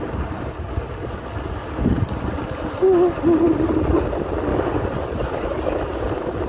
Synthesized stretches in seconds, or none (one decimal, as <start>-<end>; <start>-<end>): 4.5-6.5